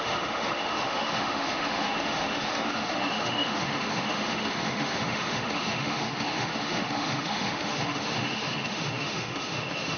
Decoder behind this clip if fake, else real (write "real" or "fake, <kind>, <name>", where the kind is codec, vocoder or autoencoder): fake, autoencoder, DAC-VAE